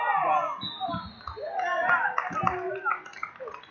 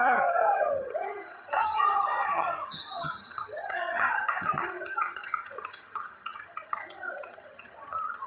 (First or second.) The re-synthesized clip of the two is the second